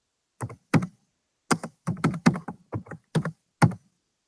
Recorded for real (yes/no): yes